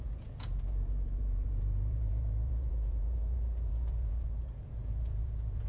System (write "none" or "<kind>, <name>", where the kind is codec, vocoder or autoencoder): vocoder, Vocos